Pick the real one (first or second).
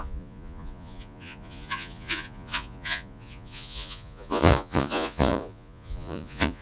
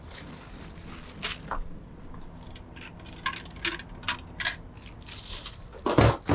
second